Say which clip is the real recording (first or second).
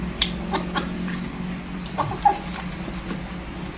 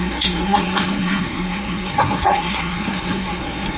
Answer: first